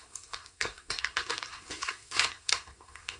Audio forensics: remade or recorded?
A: remade